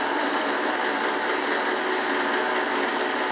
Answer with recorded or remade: recorded